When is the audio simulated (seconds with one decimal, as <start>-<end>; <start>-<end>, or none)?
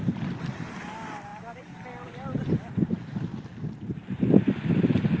none